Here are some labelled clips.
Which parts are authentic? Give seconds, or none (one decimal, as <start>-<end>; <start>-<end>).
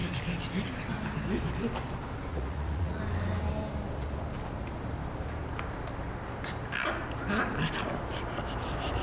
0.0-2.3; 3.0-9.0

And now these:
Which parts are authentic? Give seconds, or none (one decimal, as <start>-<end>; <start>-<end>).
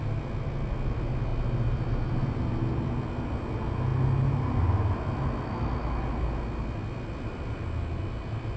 0.0-8.6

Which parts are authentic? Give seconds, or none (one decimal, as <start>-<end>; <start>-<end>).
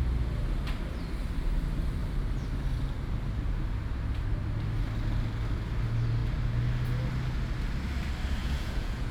0.0-8.4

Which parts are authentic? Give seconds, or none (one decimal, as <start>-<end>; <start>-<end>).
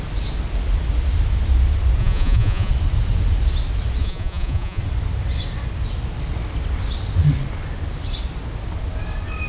0.0-2.0; 2.7-4.0; 4.8-9.5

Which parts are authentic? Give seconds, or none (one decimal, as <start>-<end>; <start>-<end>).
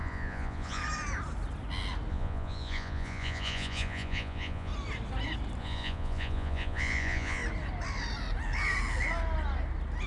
0.8-2.1; 4.7-5.6; 7.4-10.1